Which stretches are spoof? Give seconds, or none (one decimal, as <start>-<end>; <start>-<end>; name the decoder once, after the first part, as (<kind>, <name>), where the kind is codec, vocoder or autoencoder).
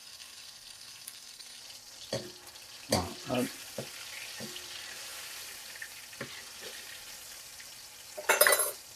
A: 0.0-1.6 (codec, SNAC)